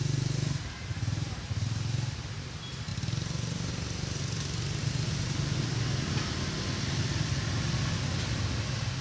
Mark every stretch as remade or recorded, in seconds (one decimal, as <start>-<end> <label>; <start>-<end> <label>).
0.0-9.0 recorded